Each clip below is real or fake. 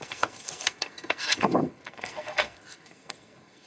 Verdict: fake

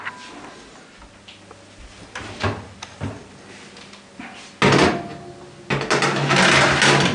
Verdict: real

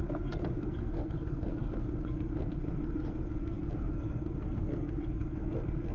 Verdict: fake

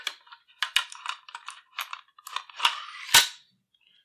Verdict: real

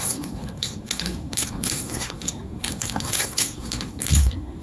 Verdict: fake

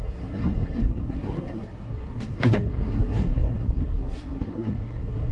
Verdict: fake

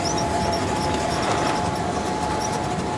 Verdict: real